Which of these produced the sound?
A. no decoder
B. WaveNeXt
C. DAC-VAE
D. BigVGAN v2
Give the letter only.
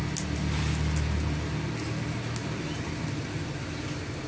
A